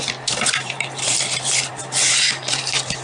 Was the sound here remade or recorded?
remade